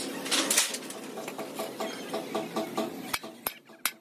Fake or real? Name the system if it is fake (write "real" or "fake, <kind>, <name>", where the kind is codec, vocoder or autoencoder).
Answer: real